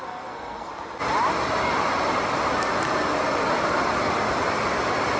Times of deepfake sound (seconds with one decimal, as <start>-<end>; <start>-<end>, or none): 0.0-0.7